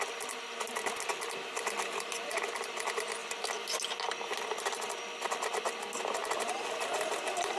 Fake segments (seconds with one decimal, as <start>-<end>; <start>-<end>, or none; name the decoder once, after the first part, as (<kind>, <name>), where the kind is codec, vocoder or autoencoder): none

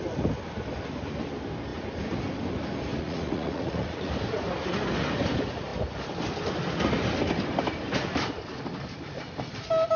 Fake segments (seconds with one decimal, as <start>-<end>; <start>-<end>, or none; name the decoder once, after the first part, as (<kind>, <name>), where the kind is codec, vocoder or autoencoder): 2.9-4.1 (vocoder, Vocos)

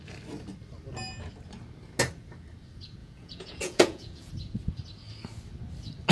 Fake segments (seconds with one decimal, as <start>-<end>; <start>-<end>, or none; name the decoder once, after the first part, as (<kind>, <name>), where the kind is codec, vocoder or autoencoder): 3.0-4.3 (vocoder, Vocos)

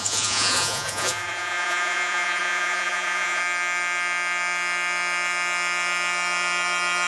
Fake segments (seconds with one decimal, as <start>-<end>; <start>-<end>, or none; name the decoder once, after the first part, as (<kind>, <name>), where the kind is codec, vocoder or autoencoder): 0.0-3.4 (vocoder, Vocos)

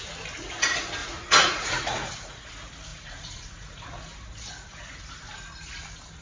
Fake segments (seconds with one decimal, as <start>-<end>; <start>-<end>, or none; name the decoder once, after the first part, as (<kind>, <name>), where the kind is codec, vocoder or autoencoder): 1.0-2.5 (vocoder, Vocos); 2.9-3.8

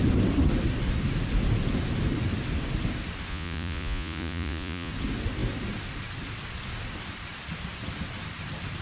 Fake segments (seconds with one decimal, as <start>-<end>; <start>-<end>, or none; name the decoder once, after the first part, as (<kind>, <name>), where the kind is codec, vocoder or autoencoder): 3.3-4.9 (vocoder, Vocos)